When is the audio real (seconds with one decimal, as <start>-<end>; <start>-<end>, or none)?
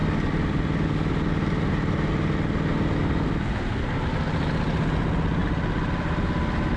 0.0-6.8